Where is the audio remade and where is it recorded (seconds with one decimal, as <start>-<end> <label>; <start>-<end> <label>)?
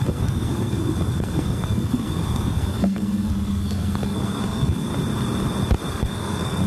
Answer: 0.0-4.9 remade; 4.9-5.9 recorded; 5.9-6.7 remade